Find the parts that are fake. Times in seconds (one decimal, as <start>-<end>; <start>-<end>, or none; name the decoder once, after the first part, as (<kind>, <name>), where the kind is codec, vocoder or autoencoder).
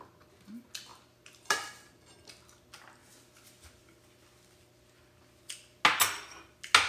none